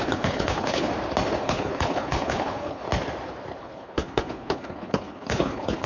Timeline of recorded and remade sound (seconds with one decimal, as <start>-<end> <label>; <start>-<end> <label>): 0.0-0.9 remade; 0.9-1.4 recorded; 1.4-2.8 remade; 2.8-3.6 recorded; 3.6-5.9 remade